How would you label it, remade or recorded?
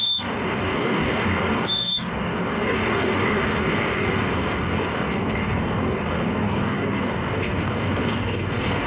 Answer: remade